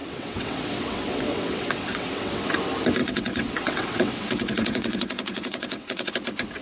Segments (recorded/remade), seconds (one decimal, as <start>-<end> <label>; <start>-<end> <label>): 0.0-2.5 remade; 2.5-3.0 recorded; 3.0-6.1 remade; 6.1-6.6 recorded